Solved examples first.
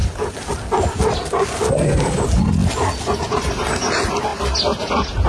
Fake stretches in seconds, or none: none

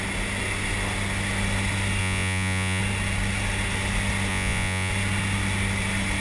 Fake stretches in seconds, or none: 2.0-2.8 (vocoder, Vocos); 4.3-4.9

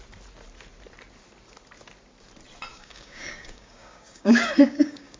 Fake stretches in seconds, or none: 2.7-5.2 (codec, DAC)

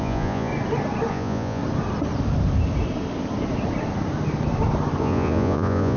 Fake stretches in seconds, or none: 0.0-0.5 (vocoder, Vocos); 1.1-1.6; 5.0-6.0